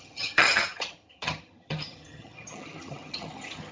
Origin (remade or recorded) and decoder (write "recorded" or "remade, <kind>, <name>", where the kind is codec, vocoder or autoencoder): remade, vocoder, HiFi-GAN